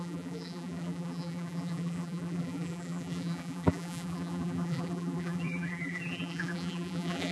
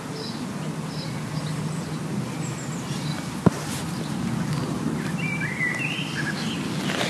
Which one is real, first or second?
second